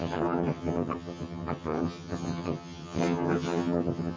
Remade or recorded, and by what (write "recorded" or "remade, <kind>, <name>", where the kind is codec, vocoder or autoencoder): remade, vocoder, HiFi-GAN